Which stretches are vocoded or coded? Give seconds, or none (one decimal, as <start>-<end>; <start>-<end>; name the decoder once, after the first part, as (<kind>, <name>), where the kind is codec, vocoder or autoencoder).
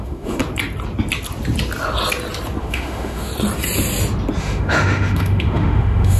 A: 0.0-0.4 (autoencoder, DAC-VAE); 2.6-3.3; 4.4-6.2